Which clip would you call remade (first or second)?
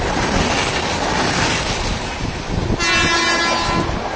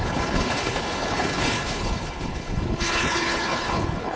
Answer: second